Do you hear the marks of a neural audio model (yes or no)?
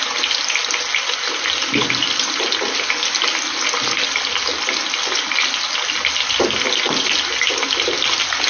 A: no